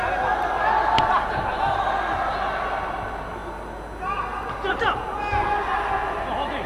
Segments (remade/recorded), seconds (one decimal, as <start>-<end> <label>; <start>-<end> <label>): 0.0-6.7 recorded